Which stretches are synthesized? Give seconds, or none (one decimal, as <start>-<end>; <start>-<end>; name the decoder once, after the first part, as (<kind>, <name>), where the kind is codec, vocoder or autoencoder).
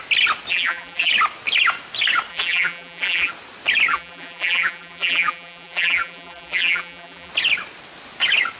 0.5-1.1 (vocoder, BigVGAN v2); 2.3-3.3; 3.9-7.3